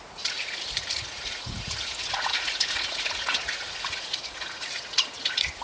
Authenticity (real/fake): fake